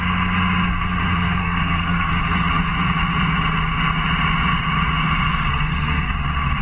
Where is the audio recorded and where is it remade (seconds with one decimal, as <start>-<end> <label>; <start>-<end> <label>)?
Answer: 0.0-1.4 recorded; 1.4-2.1 remade; 2.1-5.5 recorded; 5.5-6.1 remade; 6.1-6.6 recorded